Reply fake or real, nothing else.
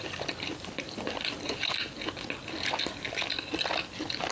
real